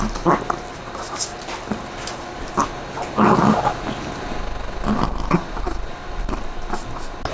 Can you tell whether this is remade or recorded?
recorded